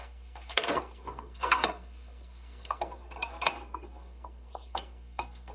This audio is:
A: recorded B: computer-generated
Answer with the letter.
B